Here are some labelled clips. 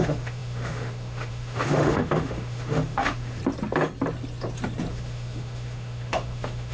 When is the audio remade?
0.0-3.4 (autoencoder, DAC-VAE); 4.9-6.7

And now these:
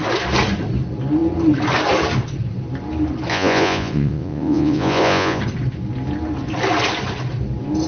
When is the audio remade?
3.3-5.4 (vocoder, Vocos)

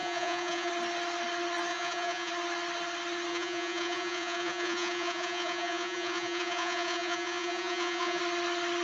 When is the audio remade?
0.0-0.7 (vocoder, Vocos); 1.7-2.3; 3.3-8.2

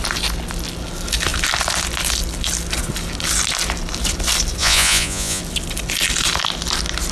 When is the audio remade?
4.6-5.4 (vocoder, Vocos)